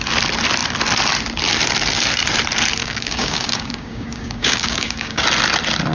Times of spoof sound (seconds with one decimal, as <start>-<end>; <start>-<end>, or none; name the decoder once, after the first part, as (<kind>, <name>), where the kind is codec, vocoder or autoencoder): 2.8-5.2 (codec, DAC)